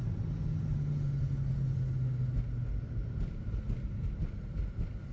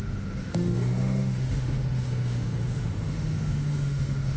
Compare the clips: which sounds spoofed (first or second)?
second